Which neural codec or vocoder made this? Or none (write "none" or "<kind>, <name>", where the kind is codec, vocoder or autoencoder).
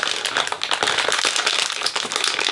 none